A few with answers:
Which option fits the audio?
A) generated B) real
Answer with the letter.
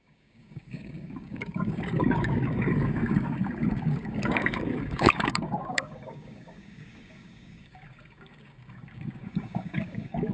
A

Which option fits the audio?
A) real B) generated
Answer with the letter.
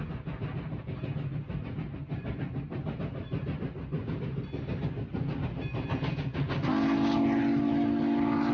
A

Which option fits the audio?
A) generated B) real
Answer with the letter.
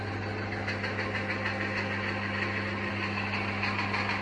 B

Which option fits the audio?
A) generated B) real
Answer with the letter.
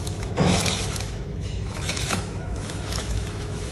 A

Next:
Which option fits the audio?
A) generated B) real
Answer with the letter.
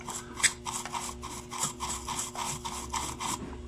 B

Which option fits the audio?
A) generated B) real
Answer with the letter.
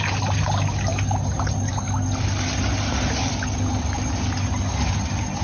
B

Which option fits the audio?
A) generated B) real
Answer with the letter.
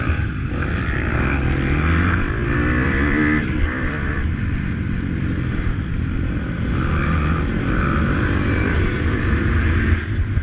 B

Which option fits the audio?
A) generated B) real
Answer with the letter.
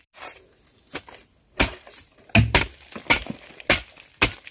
B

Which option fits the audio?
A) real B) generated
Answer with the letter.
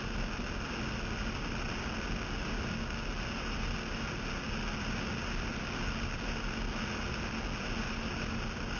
A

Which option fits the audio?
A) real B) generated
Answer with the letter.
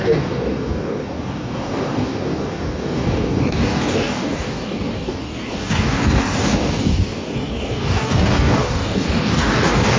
B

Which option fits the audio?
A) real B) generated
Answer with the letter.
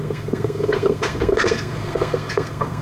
B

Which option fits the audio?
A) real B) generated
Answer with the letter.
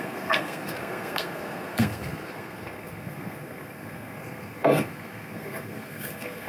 B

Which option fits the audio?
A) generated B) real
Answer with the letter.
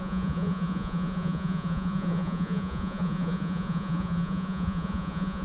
A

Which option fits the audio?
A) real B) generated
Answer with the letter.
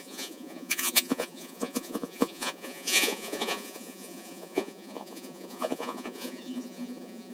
B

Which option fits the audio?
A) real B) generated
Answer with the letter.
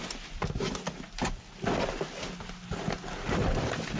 A